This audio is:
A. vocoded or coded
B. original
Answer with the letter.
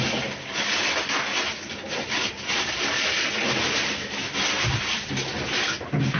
B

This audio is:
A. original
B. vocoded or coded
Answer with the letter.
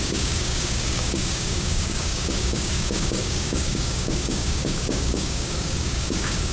B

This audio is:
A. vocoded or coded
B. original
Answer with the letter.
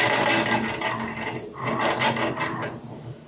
B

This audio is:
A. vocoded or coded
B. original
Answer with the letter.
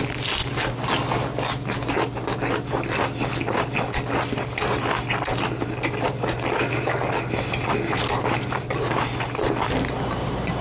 B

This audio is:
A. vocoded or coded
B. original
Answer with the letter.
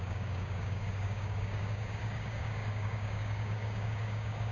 A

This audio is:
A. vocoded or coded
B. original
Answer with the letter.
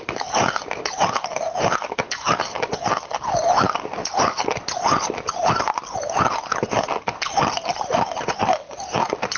B